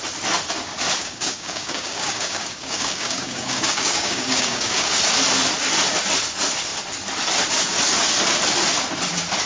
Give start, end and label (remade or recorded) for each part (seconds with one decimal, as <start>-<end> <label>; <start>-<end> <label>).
0.0-1.0 recorded; 1.0-5.0 remade; 5.0-9.5 recorded